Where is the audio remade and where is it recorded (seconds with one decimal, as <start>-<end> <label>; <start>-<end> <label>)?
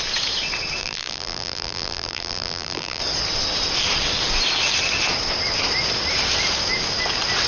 0.0-0.8 recorded; 0.8-3.0 remade; 3.0-7.5 recorded